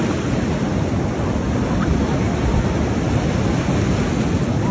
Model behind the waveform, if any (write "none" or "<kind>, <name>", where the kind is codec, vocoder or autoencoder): none